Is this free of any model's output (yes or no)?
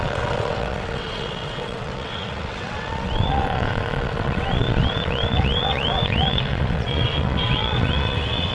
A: no